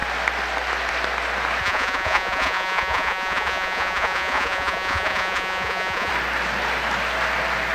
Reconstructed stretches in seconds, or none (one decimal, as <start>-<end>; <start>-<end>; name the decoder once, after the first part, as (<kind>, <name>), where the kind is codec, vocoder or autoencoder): 1.6-6.1 (vocoder, Vocos)